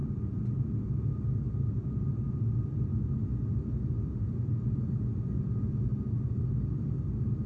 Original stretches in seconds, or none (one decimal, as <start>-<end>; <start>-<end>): 0.0-7.5